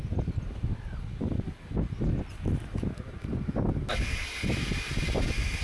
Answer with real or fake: real